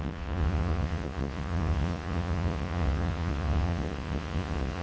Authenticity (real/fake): fake